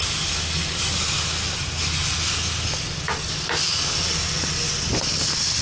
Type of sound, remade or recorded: recorded